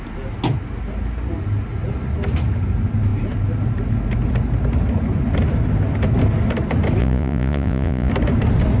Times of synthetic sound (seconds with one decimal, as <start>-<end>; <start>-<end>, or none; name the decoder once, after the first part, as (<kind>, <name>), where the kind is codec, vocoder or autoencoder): 7.0-8.1 (vocoder, Vocos)